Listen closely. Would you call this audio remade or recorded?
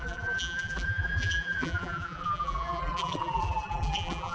remade